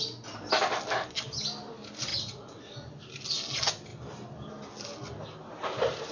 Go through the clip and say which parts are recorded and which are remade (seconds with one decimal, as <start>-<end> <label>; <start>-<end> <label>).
0.0-2.1 recorded; 2.1-2.6 remade; 2.6-6.1 recorded